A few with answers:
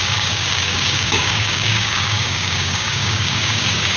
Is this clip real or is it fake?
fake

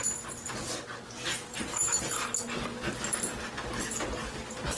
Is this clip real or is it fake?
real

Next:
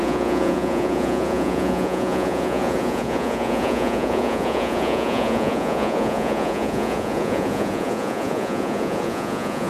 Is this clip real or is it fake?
fake